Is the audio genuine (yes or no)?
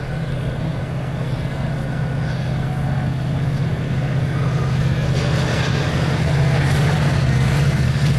no